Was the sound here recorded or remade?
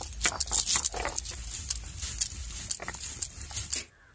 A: recorded